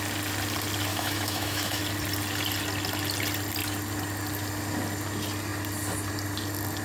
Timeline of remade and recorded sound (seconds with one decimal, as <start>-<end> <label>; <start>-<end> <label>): 0.0-0.9 recorded; 0.9-1.8 remade; 1.8-6.8 recorded